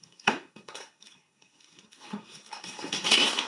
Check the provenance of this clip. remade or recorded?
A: remade